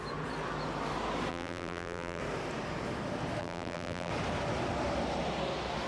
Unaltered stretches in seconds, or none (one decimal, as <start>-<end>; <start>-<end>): 0.0-1.3; 2.2-3.4; 4.1-5.9